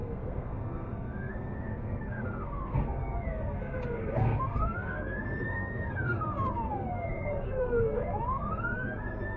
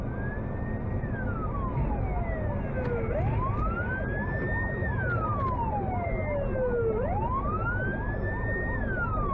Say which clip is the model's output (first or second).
first